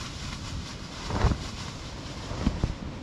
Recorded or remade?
recorded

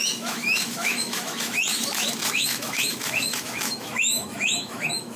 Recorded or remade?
remade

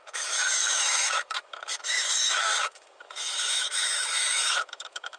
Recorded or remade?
remade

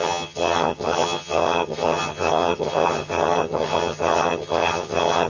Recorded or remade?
remade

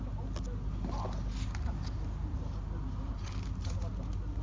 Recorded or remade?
recorded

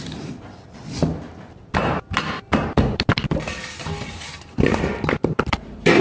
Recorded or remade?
remade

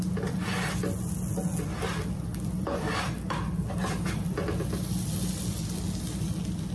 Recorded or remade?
recorded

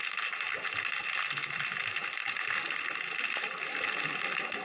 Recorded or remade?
recorded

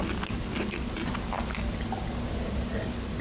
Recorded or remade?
recorded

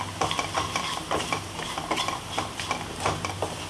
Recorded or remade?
recorded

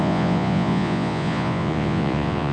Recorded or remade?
remade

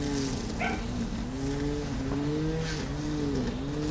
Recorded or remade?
recorded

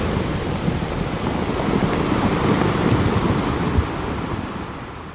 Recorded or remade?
recorded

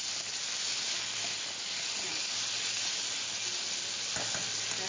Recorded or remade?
recorded